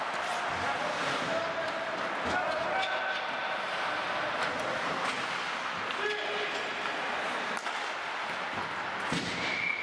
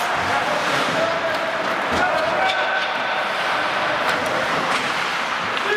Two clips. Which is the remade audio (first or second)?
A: second